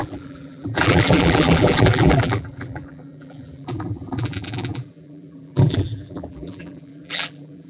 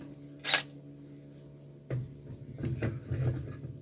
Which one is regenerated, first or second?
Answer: first